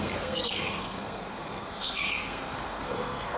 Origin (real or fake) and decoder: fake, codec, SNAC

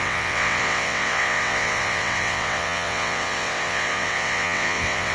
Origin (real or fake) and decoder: fake, vocoder, WaveNeXt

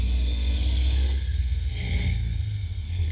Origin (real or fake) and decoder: fake, codec, SNAC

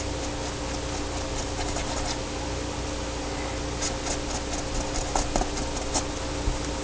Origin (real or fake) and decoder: real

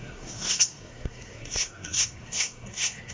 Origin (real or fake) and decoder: fake, codec, SNAC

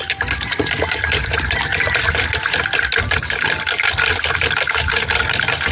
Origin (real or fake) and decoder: real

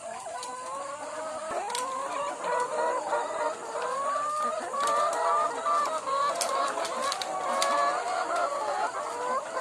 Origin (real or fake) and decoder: real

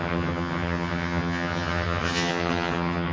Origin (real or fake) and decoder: fake, vocoder, HiFi-GAN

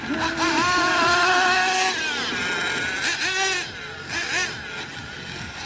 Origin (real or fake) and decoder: real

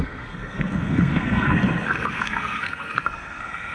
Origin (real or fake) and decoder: fake, codec, SNAC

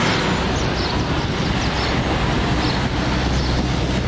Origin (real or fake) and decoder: real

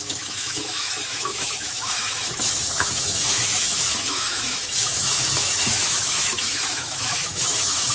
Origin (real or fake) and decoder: fake, autoencoder, DAC-VAE